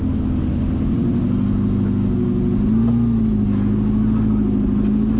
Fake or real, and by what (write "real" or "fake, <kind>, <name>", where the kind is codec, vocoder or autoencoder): real